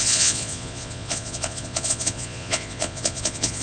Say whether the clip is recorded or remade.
remade